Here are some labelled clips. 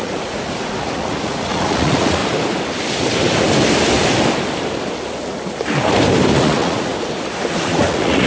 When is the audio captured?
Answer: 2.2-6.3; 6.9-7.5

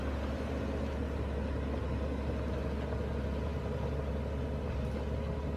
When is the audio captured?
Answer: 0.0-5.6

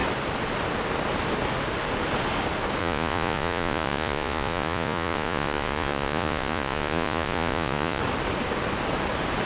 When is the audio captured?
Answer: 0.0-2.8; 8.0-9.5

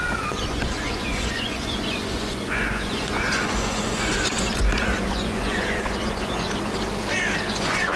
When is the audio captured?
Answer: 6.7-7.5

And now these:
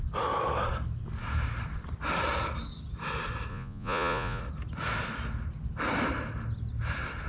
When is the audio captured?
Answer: 0.0-3.5; 4.4-7.3

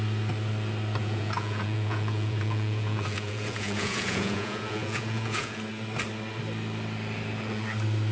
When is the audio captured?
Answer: 0.0-1.0; 5.6-8.1

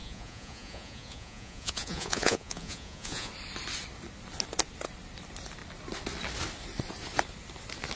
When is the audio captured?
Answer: 3.3-8.0